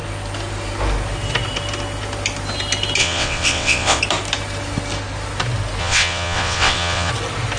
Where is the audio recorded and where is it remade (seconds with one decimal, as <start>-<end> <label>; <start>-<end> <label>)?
0.0-3.0 recorded; 3.0-4.0 remade; 4.0-5.8 recorded; 5.8-7.1 remade; 7.1-7.6 recorded